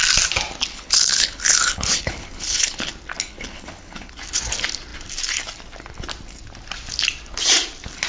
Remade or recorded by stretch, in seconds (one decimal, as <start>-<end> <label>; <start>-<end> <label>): 0.0-0.7 recorded; 0.7-2.9 remade; 2.9-3.3 recorded; 3.3-4.1 remade; 4.1-8.1 recorded